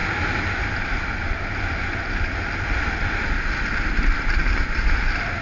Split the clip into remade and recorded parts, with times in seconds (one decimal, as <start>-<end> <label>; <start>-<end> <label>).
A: 0.0-5.4 recorded